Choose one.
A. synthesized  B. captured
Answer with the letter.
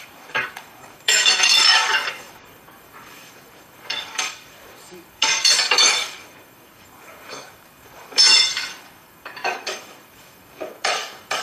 A